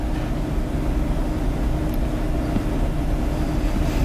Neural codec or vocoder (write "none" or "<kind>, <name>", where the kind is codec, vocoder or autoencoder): none